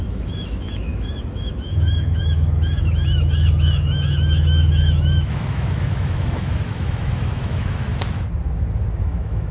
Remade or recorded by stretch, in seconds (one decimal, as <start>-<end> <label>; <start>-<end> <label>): 0.0-7.9 remade; 7.9-9.0 recorded; 9.0-9.5 remade